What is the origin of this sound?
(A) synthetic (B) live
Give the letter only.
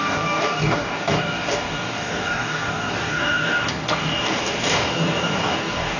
A